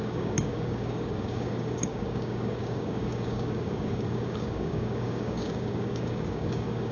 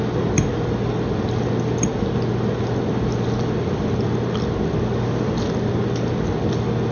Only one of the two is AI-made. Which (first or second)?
first